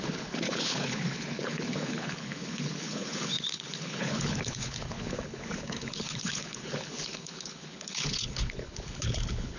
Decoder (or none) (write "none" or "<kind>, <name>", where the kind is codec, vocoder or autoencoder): codec, HILCodec